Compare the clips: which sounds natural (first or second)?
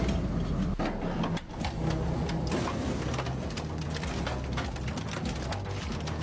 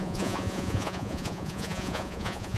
first